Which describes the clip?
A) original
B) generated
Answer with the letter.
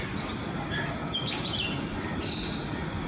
A